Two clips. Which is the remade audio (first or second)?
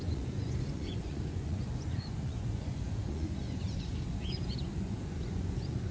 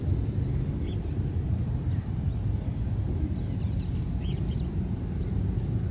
first